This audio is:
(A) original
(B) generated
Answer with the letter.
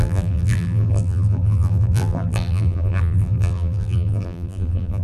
B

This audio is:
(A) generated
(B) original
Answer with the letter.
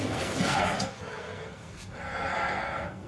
A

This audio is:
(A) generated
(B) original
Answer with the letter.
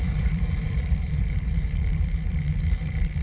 A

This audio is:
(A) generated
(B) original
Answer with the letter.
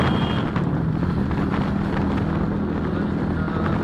B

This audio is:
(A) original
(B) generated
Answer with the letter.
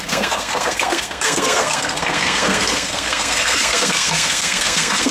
B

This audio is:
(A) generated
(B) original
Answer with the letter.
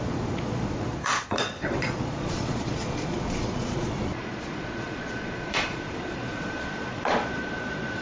A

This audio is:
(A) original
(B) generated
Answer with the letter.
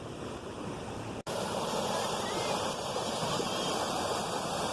A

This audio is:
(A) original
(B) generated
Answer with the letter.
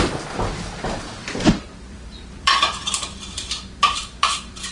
B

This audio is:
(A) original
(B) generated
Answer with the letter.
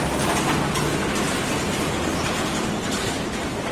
A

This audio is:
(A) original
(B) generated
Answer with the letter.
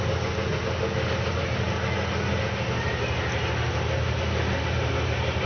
A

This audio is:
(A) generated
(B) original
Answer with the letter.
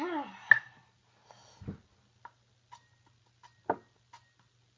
B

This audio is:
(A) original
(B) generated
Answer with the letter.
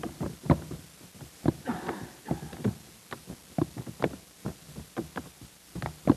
A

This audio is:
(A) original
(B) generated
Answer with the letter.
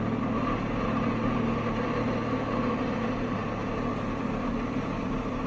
A